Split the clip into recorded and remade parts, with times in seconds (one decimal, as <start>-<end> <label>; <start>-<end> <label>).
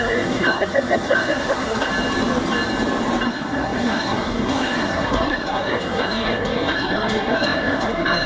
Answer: 0.0-1.9 remade; 1.9-3.3 recorded; 3.3-8.3 remade